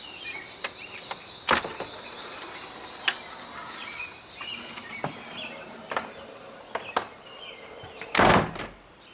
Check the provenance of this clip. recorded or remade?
recorded